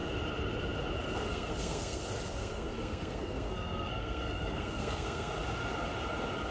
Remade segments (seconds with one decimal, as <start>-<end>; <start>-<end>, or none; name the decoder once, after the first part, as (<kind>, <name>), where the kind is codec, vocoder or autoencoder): 1.3-2.0 (codec, SNAC); 2.4-5.3